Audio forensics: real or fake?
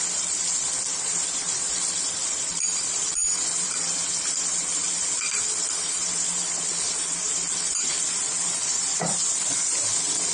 fake